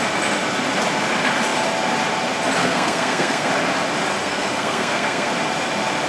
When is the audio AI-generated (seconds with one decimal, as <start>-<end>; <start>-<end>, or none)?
2.6-3.5; 4.2-5.3